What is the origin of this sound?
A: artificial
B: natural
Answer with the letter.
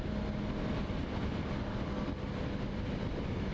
B